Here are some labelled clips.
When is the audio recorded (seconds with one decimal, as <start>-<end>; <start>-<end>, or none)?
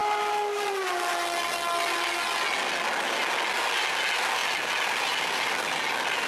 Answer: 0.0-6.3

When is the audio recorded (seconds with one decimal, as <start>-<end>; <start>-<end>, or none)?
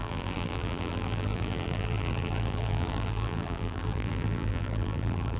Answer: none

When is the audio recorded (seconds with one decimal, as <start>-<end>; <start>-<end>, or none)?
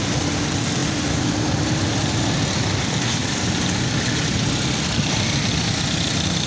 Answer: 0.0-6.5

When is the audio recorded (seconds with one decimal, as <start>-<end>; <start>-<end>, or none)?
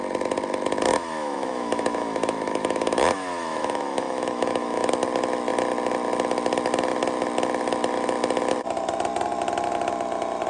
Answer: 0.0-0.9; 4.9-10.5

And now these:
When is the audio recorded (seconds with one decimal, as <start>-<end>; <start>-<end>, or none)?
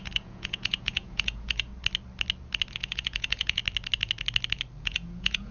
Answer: 1.7-2.7; 3.6-4.8